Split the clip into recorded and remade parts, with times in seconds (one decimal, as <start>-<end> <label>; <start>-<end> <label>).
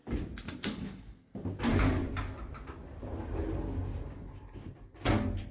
0.0-5.5 recorded